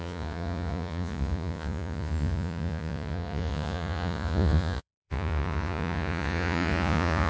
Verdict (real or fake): fake